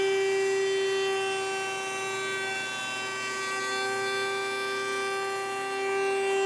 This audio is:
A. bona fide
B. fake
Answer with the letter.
A